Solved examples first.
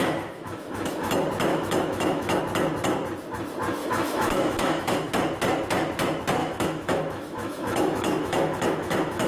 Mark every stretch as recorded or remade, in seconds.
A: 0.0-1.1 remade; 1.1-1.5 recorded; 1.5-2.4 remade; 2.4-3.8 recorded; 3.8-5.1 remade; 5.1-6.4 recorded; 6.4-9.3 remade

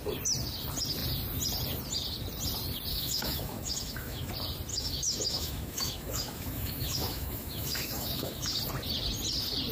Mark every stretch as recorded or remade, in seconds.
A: 0.0-2.9 recorded; 2.9-4.3 remade; 4.3-4.7 recorded; 4.7-8.6 remade; 8.6-9.7 recorded

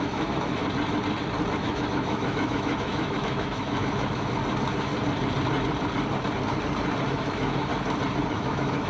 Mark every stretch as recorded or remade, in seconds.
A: 0.0-0.6 remade; 0.6-1.5 recorded; 1.5-4.4 remade; 4.4-7.1 recorded; 7.1-7.7 remade; 7.7-8.3 recorded; 8.3-8.9 remade

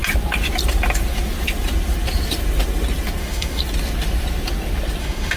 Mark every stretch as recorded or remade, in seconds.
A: 0.0-3.2 recorded; 3.2-3.6 remade; 3.6-5.0 recorded; 5.0-5.4 remade

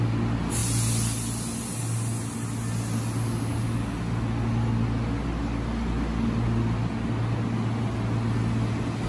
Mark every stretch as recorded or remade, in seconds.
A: 0.0-9.1 recorded

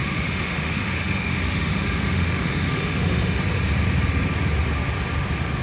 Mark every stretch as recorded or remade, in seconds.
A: 0.0-3.4 remade; 3.4-5.6 recorded

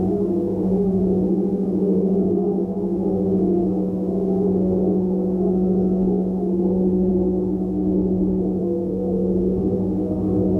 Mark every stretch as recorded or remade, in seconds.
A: 0.0-10.6 remade